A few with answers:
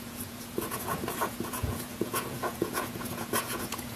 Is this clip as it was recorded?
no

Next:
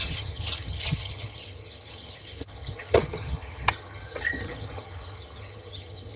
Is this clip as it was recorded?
no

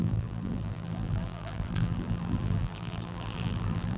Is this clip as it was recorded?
no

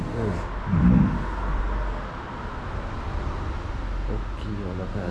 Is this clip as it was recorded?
yes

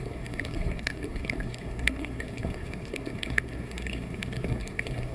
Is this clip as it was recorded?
no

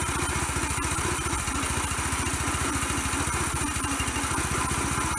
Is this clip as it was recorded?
yes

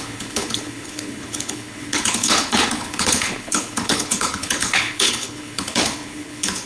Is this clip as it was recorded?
no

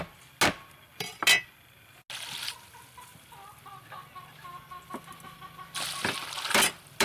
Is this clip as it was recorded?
yes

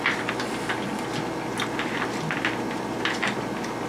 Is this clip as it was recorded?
yes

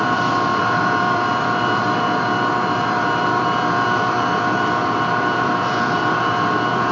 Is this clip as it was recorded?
no